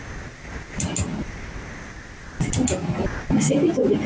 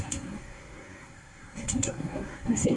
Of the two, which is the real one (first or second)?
first